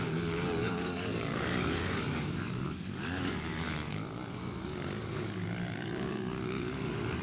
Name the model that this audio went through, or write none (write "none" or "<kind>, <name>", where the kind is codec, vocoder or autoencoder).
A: codec, DAC